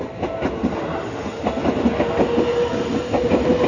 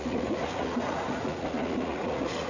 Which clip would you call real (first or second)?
first